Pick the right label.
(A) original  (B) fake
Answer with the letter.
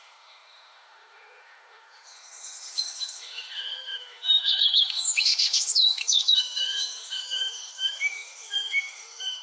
B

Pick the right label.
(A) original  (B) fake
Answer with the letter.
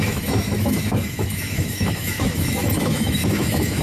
B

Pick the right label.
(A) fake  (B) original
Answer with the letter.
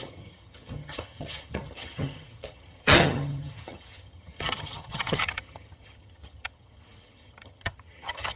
A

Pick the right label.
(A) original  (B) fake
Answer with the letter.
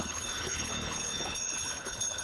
B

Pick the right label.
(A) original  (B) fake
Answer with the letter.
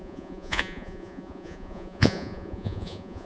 B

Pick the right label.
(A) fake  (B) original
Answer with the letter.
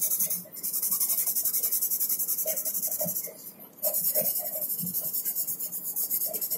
A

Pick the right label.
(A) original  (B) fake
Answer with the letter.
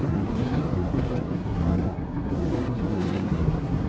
B